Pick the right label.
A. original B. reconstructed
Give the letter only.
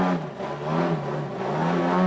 A